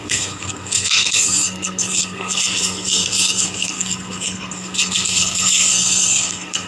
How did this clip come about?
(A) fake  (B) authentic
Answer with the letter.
A